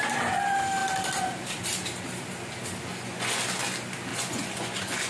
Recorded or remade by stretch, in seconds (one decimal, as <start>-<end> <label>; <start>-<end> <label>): 0.0-2.9 recorded; 2.9-3.4 remade; 3.4-4.1 recorded; 4.1-5.1 remade